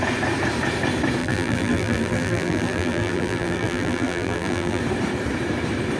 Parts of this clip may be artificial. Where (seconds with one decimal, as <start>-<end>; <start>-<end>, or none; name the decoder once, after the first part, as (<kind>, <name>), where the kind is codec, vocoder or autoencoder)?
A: 1.2-4.8 (vocoder, BigVGAN v2)